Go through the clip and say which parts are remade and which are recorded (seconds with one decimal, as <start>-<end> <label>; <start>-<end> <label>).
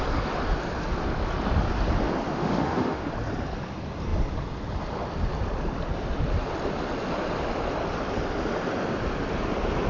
0.0-2.3 recorded; 2.3-3.1 remade; 3.1-9.9 recorded